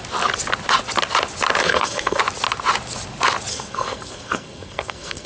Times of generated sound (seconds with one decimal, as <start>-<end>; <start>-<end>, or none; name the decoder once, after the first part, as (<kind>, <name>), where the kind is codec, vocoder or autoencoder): 1.6-2.2 (codec, SNAC); 3.5-5.3